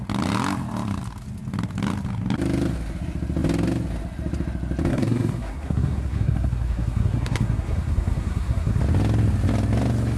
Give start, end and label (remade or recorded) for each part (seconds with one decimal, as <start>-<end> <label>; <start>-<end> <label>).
0.0-4.9 recorded; 4.9-8.8 remade; 8.8-10.2 recorded